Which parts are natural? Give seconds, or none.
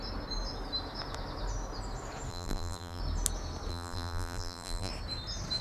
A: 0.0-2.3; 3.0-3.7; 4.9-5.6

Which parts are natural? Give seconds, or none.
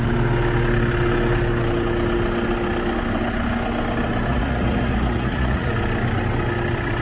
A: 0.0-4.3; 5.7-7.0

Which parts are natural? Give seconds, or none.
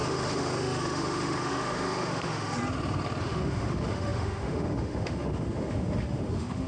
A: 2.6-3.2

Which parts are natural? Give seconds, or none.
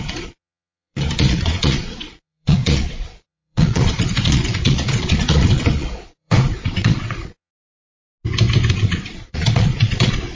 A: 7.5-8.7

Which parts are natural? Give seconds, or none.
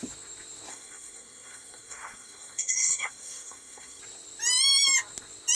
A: 0.0-0.7; 4.0-5.5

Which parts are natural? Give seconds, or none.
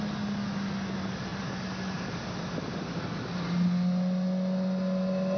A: 0.0-5.4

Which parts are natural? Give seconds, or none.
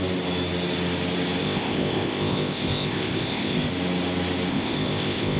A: 0.0-1.4; 3.7-4.5